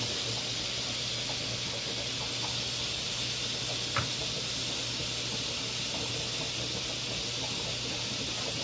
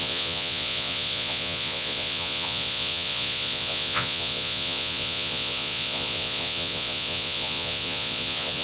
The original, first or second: first